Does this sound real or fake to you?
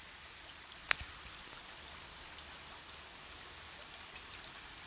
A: real